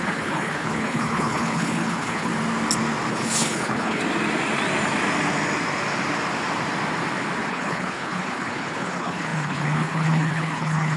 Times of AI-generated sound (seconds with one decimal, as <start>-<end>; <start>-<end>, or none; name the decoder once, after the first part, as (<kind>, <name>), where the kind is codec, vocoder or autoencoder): 0.0-2.3 (codec, HILCodec); 3.1-4.0; 7.5-11.0